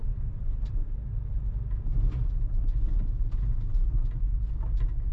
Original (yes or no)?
yes